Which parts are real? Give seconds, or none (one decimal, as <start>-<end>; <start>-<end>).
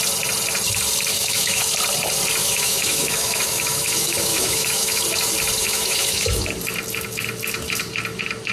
0.0-1.1; 1.7-2.4; 5.0-5.6; 6.5-8.5